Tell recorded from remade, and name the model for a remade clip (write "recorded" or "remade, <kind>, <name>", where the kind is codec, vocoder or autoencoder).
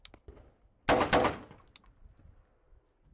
recorded